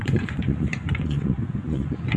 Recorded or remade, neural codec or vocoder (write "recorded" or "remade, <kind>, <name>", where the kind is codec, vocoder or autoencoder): remade, vocoder, Vocos